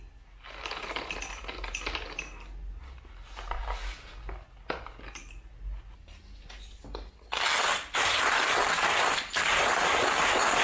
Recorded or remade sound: recorded